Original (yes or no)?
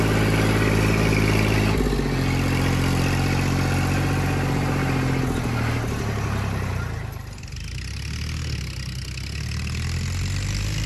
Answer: yes